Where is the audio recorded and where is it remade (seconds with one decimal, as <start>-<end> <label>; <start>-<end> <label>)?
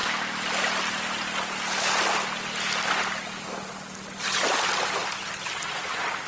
0.0-6.3 recorded